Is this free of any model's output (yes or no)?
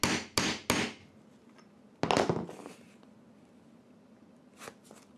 yes